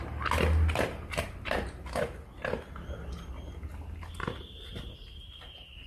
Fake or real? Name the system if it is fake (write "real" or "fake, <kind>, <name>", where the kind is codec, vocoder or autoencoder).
real